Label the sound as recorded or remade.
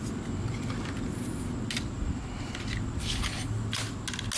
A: recorded